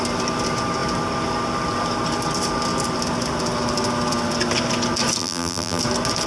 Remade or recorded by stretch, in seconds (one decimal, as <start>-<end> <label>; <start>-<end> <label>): 0.0-5.2 recorded; 5.2-5.8 remade; 5.8-6.3 recorded

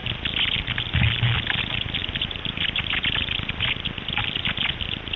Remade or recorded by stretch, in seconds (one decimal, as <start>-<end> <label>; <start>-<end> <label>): 0.0-1.2 remade; 1.2-2.0 recorded; 2.0-5.2 remade

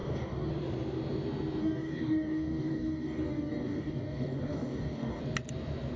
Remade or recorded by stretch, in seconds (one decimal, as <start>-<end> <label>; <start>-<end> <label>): 0.0-0.5 remade; 0.5-1.6 recorded; 1.6-5.2 remade; 5.2-6.0 recorded